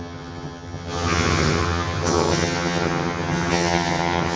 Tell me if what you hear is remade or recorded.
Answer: remade